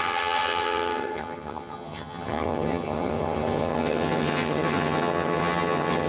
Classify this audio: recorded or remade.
remade